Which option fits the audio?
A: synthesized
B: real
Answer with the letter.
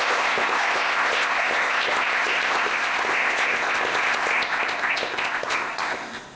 A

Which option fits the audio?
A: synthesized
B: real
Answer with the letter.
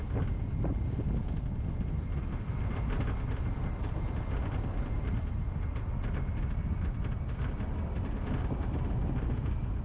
B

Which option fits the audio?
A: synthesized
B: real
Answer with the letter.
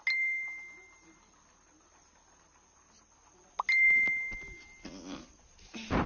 B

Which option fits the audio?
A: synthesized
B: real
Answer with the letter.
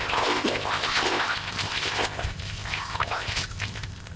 A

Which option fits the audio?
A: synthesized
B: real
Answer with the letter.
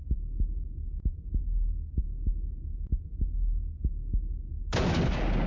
B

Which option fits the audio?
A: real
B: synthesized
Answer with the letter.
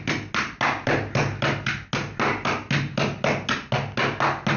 A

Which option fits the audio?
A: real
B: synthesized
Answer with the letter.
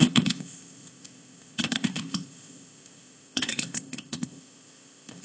B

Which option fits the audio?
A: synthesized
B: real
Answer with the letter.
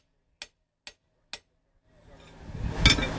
B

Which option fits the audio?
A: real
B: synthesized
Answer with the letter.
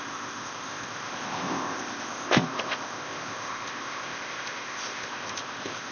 B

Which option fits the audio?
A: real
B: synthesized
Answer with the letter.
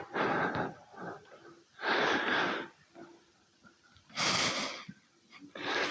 A